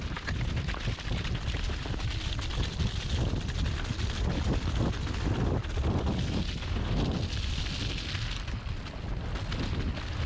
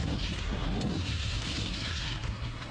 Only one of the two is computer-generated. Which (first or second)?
second